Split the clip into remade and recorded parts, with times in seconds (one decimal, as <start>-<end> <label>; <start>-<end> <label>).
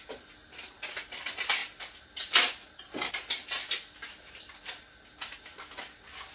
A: 0.0-6.3 recorded